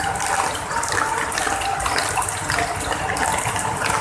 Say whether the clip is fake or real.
real